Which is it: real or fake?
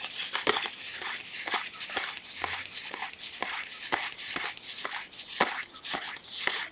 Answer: real